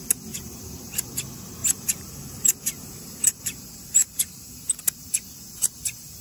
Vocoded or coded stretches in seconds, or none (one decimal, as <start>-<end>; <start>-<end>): 1.6-3.4; 4.0-4.7

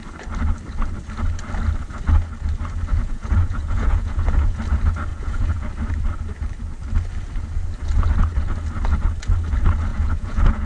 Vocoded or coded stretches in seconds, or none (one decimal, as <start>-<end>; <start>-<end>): 2.9-4.6; 5.1-5.7; 9.9-10.7

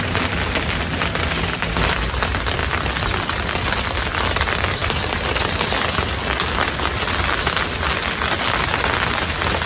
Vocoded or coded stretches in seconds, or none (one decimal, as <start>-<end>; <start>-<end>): none

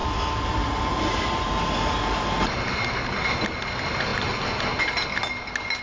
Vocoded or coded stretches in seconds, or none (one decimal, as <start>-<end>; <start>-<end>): none

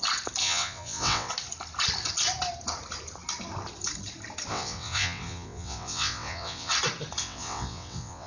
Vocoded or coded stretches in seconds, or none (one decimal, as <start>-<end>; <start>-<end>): 0.4-1.3; 4.5-6.7; 7.2-8.3

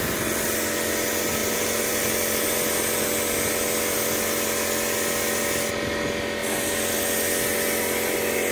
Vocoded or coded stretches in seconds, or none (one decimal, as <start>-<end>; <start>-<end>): 1.4-2.0